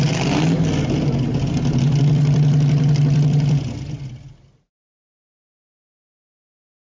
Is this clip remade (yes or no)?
no